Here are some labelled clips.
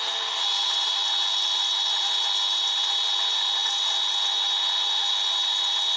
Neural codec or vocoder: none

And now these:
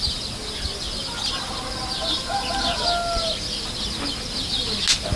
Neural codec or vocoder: none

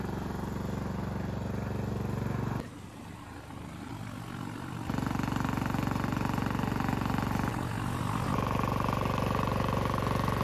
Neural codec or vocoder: none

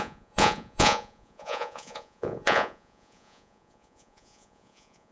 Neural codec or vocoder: vocoder, Vocos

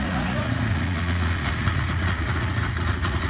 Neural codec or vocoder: vocoder, Vocos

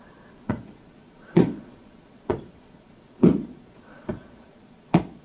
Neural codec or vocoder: vocoder, Vocos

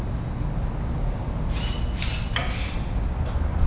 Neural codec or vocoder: none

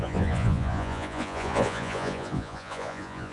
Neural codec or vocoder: vocoder, Vocos